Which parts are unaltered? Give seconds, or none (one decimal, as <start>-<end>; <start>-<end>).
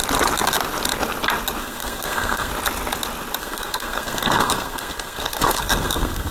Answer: 0.0-1.6; 2.5-3.4